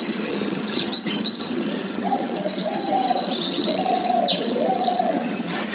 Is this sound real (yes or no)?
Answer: no